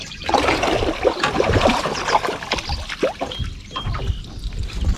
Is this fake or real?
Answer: real